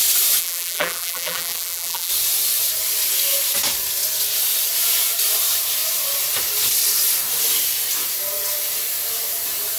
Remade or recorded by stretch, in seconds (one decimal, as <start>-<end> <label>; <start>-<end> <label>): 0.0-0.4 recorded; 0.4-2.1 remade; 2.1-9.8 recorded